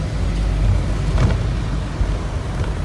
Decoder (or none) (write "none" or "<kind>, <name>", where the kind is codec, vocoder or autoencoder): none